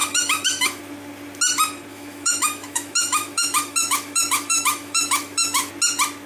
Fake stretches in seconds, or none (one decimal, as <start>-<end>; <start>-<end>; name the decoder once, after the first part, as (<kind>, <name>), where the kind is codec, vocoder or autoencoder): 0.0-0.8 (autoencoder, DAC-VAE); 1.9-5.7